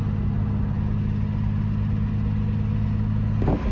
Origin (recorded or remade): recorded